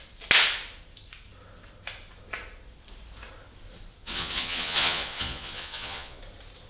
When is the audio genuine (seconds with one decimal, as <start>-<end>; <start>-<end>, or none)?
0.0-4.0; 6.2-6.7